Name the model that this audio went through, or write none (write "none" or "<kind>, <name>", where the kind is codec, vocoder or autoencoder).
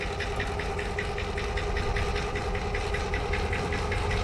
none